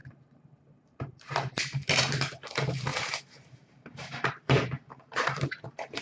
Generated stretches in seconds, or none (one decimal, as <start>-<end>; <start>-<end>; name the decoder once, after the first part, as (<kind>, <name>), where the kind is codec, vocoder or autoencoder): 2.9-6.0 (vocoder, BigVGAN v2)